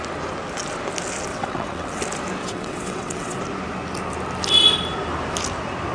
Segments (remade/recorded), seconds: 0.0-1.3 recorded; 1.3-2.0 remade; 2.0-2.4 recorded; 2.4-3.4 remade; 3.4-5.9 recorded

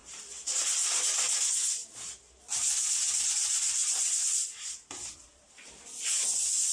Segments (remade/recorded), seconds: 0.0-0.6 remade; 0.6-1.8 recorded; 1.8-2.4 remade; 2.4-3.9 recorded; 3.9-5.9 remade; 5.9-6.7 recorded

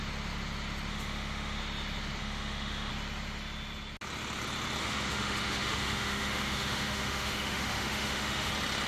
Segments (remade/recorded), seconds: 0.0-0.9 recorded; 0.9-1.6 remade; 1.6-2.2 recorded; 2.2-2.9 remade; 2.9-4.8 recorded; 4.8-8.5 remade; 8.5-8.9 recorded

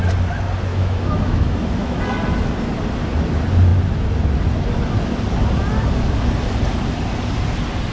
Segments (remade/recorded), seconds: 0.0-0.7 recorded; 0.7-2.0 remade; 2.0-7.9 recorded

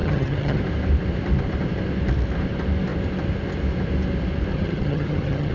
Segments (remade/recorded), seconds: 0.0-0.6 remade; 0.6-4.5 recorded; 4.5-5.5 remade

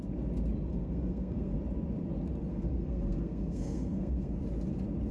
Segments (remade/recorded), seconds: 0.0-0.7 recorded; 0.7-1.6 remade; 1.6-2.5 recorded; 2.5-4.4 remade; 4.4-5.1 recorded

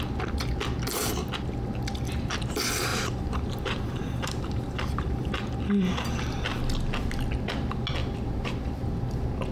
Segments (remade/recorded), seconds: 0.0-2.9 recorded; 2.9-5.5 remade; 5.5-8.0 recorded; 8.0-9.0 remade; 9.0-9.5 recorded

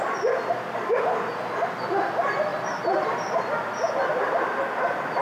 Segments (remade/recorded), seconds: 0.0-2.5 recorded; 2.5-3.4 remade; 3.4-4.1 recorded; 4.1-4.6 remade; 4.6-5.2 recorded